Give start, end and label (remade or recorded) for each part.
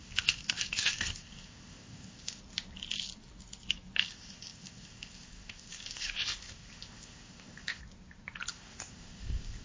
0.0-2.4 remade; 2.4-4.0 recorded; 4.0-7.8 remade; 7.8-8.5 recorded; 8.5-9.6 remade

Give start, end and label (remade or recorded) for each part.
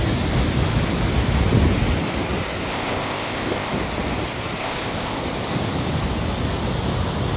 0.0-2.7 recorded; 2.7-3.7 remade; 3.7-4.6 recorded; 4.6-5.2 remade; 5.2-7.4 recorded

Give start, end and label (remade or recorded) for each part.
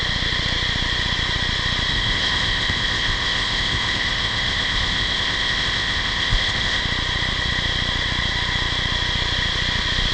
0.0-1.9 recorded; 1.9-6.8 remade; 6.8-10.1 recorded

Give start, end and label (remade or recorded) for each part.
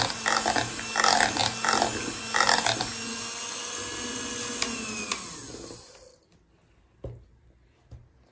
0.0-8.3 recorded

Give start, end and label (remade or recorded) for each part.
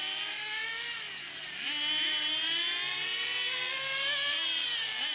0.0-5.1 recorded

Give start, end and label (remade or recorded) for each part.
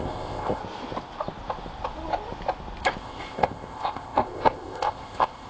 0.0-0.6 remade; 0.6-3.0 recorded; 3.0-5.5 remade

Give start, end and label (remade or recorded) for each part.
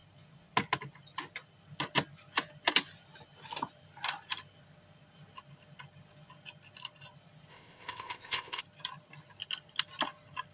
0.0-7.5 recorded; 7.5-8.6 remade; 8.6-10.5 recorded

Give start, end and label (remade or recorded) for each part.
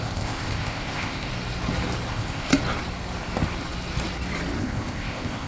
0.0-1.3 remade; 1.3-2.1 recorded; 2.1-2.5 remade; 2.5-4.6 recorded; 4.6-5.5 remade